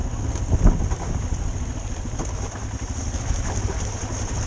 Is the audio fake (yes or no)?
no